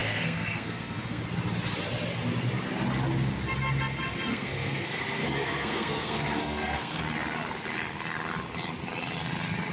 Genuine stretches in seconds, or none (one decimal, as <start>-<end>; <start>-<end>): 1.2-4.3; 7.0-9.7